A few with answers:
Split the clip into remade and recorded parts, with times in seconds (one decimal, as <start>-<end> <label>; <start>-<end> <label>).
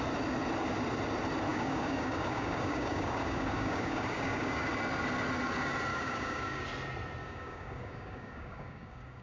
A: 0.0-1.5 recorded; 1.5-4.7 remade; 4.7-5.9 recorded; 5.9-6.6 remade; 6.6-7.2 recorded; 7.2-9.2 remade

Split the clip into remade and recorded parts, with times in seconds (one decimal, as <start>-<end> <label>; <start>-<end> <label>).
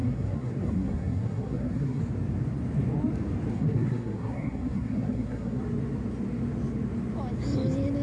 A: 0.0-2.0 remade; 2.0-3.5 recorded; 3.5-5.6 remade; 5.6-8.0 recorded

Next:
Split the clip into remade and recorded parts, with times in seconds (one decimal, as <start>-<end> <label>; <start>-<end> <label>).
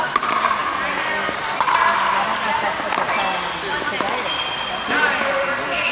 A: 0.0-5.9 recorded